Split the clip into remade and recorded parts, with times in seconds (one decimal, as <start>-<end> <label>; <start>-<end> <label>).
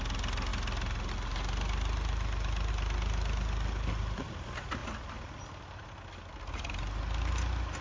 0.0-7.8 recorded